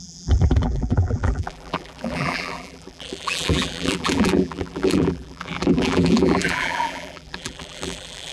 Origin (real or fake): fake